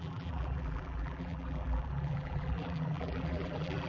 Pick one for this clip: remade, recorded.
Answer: remade